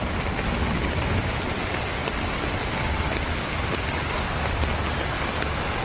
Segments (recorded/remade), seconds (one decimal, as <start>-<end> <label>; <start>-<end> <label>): 0.0-5.8 recorded

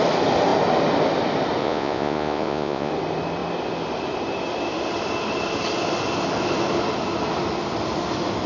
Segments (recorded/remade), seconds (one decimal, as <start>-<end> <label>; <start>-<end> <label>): 0.0-1.6 recorded; 1.6-2.9 remade; 2.9-8.5 recorded

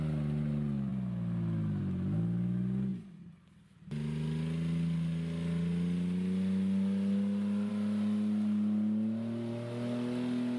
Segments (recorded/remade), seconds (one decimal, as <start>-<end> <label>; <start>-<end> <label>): 0.0-10.6 recorded

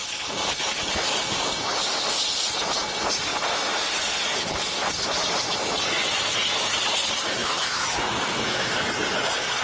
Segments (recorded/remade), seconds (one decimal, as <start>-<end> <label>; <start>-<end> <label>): 0.0-7.4 recorded; 7.4-8.7 remade; 8.7-9.6 recorded

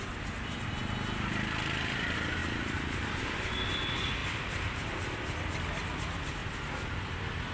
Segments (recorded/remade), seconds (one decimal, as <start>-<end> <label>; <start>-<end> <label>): 0.0-2.4 recorded; 2.4-3.2 remade; 3.2-4.2 recorded; 4.2-5.0 remade; 5.0-7.5 recorded

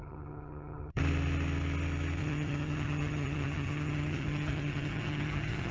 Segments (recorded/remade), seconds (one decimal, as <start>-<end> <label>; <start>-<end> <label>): 0.0-1.0 remade; 1.0-2.2 recorded; 2.2-5.7 remade